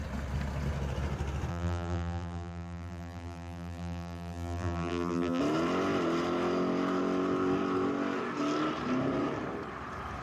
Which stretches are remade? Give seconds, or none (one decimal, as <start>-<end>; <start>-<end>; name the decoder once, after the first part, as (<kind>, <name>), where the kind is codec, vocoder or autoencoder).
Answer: 1.5-5.4 (vocoder, BigVGAN v2)